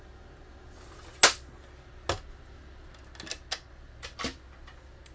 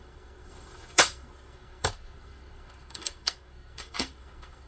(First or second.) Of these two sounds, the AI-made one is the second